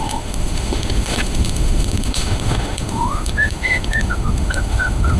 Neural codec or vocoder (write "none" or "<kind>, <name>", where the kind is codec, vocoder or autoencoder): autoencoder, DAC-VAE